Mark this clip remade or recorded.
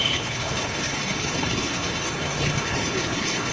remade